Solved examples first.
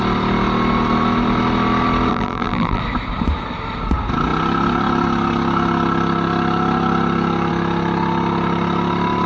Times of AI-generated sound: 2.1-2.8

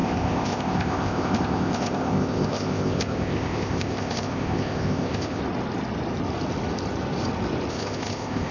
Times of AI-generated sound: 0.0-5.4; 7.7-8.5

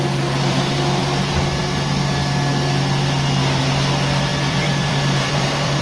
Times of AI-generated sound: 4.3-5.8